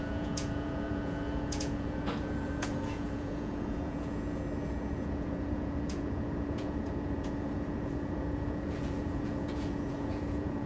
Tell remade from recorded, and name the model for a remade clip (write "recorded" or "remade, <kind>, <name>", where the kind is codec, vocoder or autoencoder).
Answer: remade, vocoder, Vocos